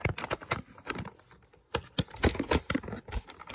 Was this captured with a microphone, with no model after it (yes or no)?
yes